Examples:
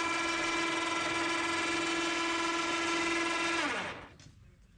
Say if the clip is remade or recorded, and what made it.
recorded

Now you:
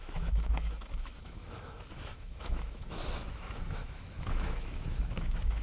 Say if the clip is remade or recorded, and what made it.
remade, autoencoder, DAC-VAE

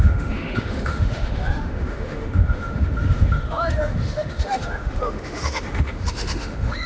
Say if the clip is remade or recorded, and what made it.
remade, autoencoder, DAC-VAE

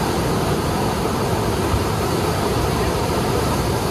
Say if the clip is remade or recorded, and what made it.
recorded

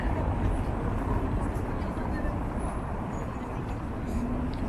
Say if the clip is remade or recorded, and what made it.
recorded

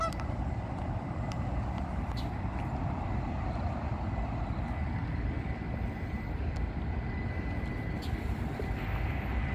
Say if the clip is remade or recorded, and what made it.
recorded